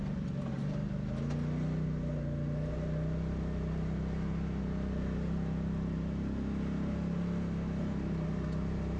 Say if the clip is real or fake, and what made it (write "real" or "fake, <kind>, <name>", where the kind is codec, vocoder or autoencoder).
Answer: real